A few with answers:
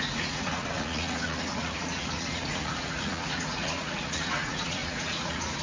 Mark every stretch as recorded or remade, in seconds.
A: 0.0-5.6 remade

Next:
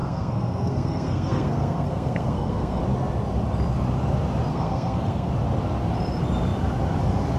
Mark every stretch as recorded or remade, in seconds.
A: 0.0-2.8 remade; 2.8-4.5 recorded; 4.5-5.3 remade; 5.3-7.4 recorded

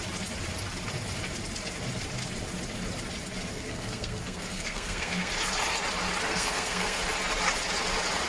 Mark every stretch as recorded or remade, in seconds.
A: 0.0-3.5 recorded; 3.5-5.3 remade; 5.3-6.3 recorded; 6.3-7.0 remade; 7.0-8.3 recorded

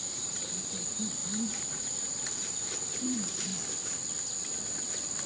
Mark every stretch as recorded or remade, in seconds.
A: 0.0-3.5 remade; 3.5-5.3 recorded

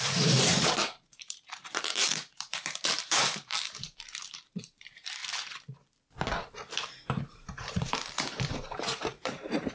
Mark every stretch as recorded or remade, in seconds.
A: 0.0-5.2 remade; 5.2-7.2 recorded; 7.2-9.7 remade